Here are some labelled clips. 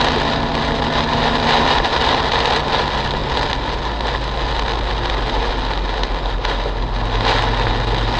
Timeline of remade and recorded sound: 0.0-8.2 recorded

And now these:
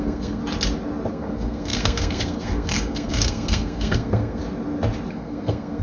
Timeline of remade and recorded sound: 0.0-0.4 remade; 0.4-1.1 recorded; 1.1-4.4 remade; 4.4-5.1 recorded; 5.1-5.8 remade

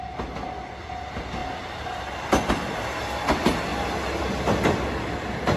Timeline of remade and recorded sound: 0.0-5.6 recorded

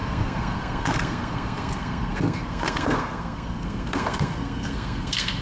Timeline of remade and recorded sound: 0.0-5.4 remade

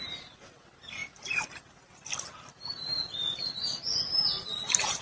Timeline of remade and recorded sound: 0.0-5.0 recorded